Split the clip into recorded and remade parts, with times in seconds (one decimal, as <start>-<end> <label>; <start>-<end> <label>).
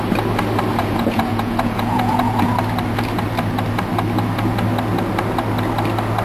0.0-0.8 recorded; 0.8-2.5 remade; 2.5-6.2 recorded